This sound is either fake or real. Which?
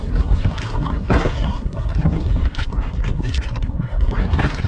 fake